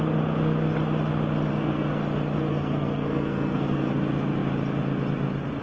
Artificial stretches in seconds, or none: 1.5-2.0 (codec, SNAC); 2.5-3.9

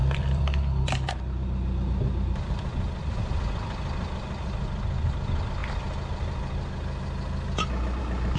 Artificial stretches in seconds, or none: 0.0-5.6 (vocoder, BigVGAN v2); 8.0-8.4

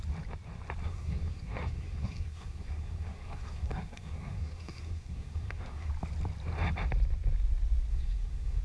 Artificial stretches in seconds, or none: 0.8-5.9 (codec, SNAC); 7.9-8.6

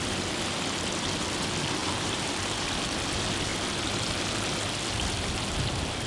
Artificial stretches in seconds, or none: 1.8-2.3 (vocoder, BigVGAN v2)

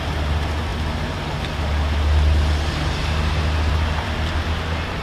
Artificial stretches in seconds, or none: none

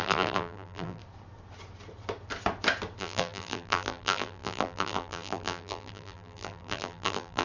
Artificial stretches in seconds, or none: 0.0-1.0 (vocoder, BigVGAN v2); 3.0-7.4

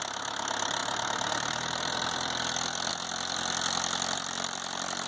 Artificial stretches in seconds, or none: none

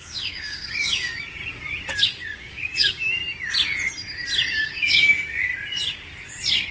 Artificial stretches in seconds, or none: 0.0-1.4 (codec, DAC); 2.0-3.2; 4.5-5.5